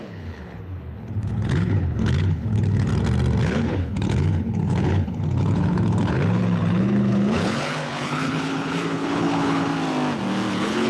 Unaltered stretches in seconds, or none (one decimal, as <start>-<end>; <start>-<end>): 2.9-3.4; 9.7-10.5

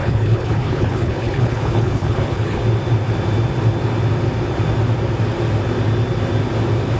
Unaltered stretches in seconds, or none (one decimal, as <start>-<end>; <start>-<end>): 2.6-7.0

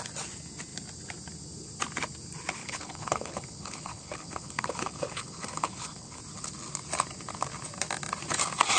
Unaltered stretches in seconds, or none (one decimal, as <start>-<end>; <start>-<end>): 0.0-2.6; 6.2-8.8

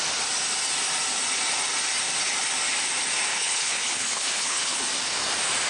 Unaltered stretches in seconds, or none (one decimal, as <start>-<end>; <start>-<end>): 0.0-3.3; 4.8-5.7

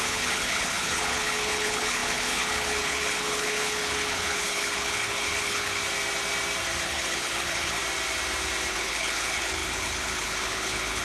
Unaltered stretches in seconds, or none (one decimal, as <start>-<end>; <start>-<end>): 5.8-6.8; 7.8-8.7

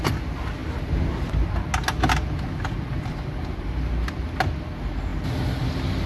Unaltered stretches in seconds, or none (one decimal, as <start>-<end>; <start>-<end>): 0.0-6.1